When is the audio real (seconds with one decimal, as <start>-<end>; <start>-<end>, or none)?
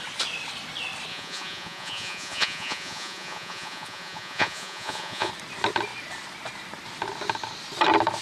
0.0-1.1; 5.3-8.2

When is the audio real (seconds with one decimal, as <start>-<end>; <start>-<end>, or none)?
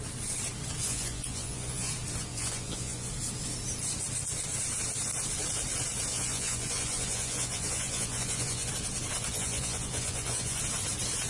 0.0-0.8; 1.9-2.3; 3.1-6.1; 8.7-9.3; 10.6-11.3